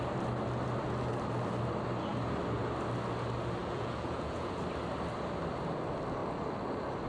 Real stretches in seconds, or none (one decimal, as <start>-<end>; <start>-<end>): 0.0-3.6; 4.6-7.1